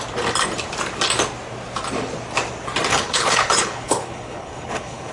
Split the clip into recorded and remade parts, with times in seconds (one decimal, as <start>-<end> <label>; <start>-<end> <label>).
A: 0.0-2.9 recorded; 2.9-5.1 remade